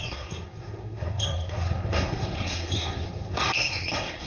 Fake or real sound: fake